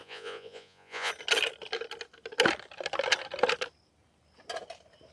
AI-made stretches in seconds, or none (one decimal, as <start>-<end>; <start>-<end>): 0.0-1.1